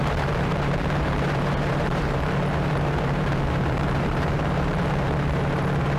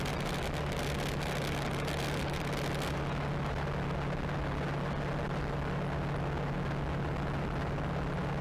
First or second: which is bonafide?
second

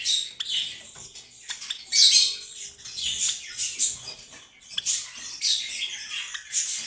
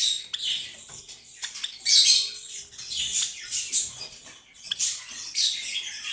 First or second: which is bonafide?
first